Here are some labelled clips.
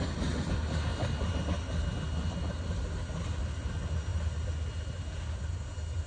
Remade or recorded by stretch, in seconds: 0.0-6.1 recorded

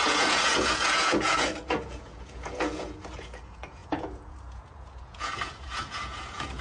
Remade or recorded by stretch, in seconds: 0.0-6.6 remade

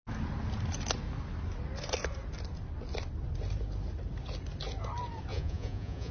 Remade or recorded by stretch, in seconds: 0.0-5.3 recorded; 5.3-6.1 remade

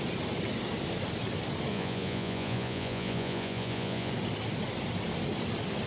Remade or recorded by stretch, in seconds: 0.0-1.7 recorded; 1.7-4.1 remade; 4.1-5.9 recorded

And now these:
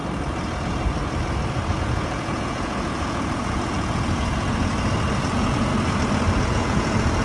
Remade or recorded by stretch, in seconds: 0.0-1.8 recorded; 1.8-4.7 remade; 4.7-5.3 recorded; 5.3-5.7 remade; 5.7-6.3 recorded; 6.3-7.2 remade